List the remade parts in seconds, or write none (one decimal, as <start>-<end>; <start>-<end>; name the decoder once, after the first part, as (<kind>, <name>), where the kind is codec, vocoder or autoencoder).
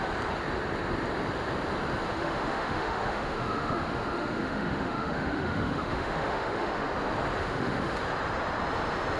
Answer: 2.1-6.9 (autoencoder, DAC-VAE); 7.4-8.0